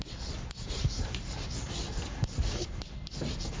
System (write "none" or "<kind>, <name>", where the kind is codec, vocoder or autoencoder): none